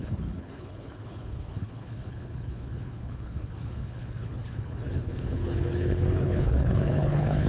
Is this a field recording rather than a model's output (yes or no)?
no